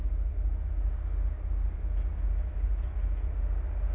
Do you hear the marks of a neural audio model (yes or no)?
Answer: no